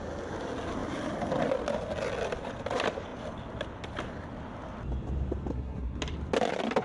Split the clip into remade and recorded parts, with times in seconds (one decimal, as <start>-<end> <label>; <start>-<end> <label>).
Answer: 0.0-5.5 recorded; 5.5-6.0 remade; 6.0-6.8 recorded